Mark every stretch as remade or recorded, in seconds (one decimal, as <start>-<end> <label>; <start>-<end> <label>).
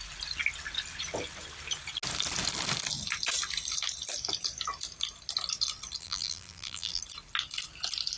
0.0-6.0 recorded; 6.0-7.0 remade; 7.0-8.2 recorded